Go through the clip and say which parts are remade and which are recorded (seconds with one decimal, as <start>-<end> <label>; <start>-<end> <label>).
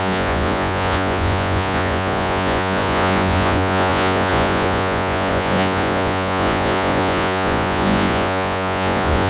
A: 0.0-9.3 remade